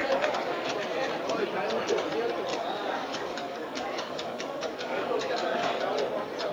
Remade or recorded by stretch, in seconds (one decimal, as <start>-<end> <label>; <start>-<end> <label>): 0.0-0.7 remade; 0.7-2.5 recorded; 2.5-5.8 remade; 5.8-6.5 recorded